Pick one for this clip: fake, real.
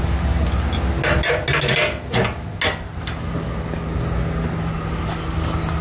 real